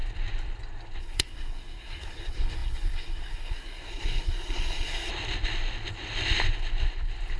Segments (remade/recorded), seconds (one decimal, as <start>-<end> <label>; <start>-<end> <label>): 0.0-1.0 recorded; 1.0-5.1 remade; 5.1-7.4 recorded